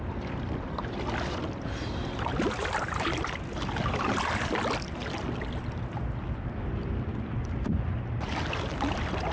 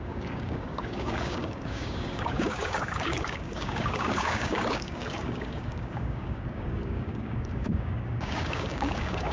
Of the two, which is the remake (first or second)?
second